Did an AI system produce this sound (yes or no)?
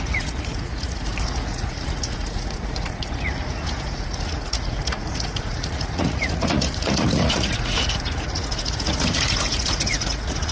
yes